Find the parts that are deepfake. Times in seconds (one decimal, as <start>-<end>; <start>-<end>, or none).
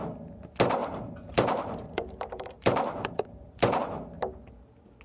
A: 0.8-3.8